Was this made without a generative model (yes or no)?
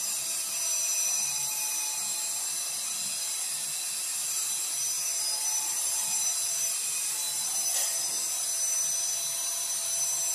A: yes